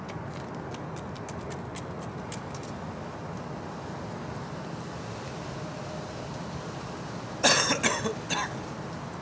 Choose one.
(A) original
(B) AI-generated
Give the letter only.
A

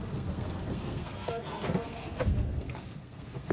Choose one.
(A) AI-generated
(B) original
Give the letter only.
A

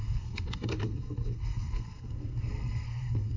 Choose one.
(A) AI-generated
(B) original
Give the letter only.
A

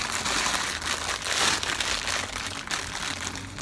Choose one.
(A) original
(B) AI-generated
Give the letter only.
A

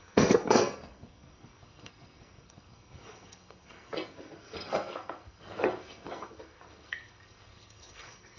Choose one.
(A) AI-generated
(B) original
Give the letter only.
A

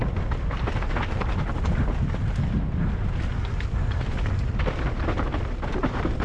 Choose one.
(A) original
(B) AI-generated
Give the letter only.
A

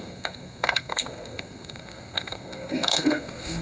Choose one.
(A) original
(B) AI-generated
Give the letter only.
B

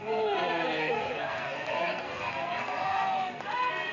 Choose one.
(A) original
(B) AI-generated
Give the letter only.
B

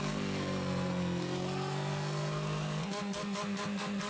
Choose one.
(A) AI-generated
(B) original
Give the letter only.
A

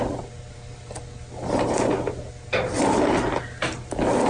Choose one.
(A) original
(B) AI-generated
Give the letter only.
A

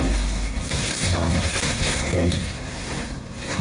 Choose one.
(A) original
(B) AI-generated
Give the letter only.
B